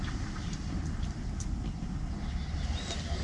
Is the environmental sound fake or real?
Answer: real